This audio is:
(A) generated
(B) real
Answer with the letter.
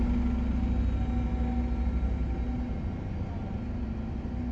B